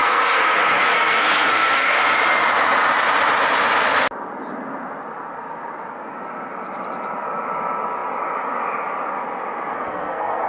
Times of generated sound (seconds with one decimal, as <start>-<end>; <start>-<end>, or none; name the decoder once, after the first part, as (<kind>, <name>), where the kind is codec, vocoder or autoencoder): 0.0-2.0 (codec, SNAC); 9.7-10.5